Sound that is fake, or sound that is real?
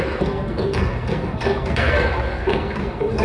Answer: fake